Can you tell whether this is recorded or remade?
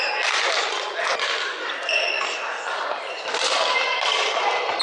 recorded